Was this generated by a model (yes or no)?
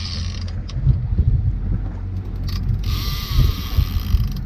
no